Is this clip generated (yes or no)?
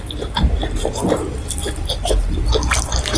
no